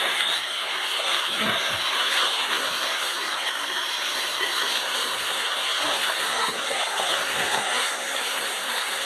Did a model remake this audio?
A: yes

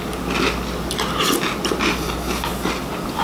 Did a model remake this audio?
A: no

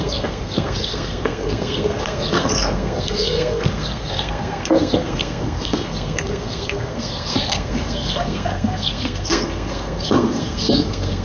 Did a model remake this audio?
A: yes